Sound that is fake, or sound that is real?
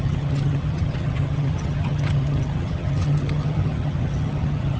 fake